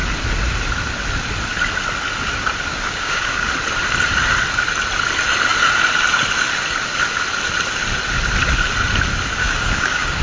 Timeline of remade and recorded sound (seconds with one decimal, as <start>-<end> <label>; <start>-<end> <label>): 0.0-2.7 recorded; 2.7-3.5 remade; 3.5-9.4 recorded; 9.4-10.2 remade